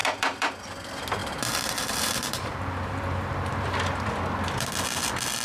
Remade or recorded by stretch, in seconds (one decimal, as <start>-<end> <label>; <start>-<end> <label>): 0.0-0.5 remade; 0.5-1.2 recorded; 1.2-4.1 remade; 4.1-5.4 recorded